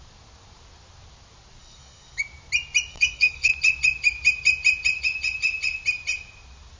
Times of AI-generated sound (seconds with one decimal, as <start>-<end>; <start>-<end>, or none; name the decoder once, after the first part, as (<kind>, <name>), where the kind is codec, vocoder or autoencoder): 1.6-2.2 (codec, DAC); 2.9-3.5